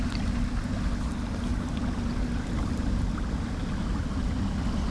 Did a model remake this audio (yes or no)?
no